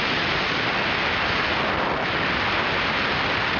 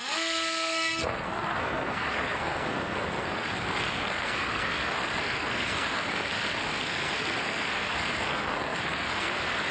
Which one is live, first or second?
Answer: first